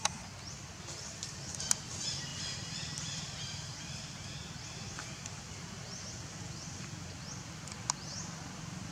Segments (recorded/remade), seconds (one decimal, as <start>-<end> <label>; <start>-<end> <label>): 0.0-8.9 recorded